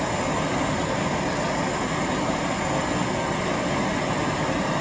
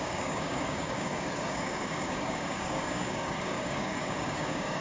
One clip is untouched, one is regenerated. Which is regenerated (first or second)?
second